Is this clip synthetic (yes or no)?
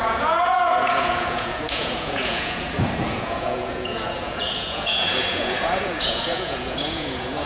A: yes